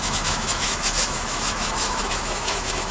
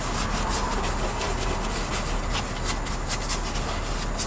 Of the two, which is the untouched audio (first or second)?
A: second